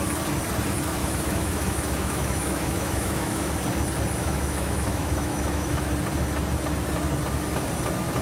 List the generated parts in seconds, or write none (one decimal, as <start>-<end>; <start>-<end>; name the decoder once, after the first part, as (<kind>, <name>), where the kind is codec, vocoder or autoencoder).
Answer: 1.0-3.5 (autoencoder, DAC-VAE); 4.2-5.9